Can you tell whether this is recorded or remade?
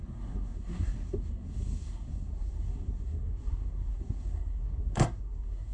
remade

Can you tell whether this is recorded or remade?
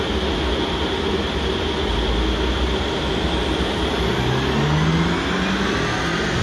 recorded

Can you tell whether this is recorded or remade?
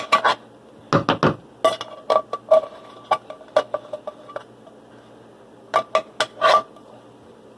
recorded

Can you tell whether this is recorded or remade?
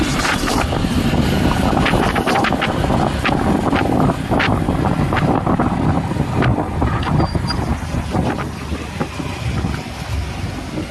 recorded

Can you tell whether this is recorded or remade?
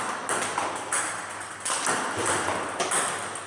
recorded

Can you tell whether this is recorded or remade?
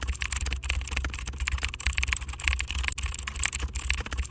recorded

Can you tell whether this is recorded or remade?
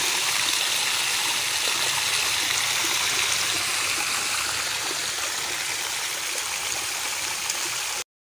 recorded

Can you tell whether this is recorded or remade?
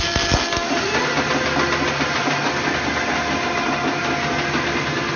recorded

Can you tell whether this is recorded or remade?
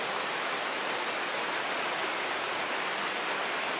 recorded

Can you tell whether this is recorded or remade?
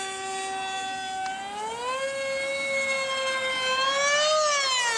recorded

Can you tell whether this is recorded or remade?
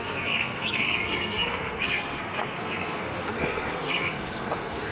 remade